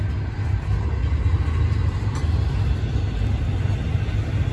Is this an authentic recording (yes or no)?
yes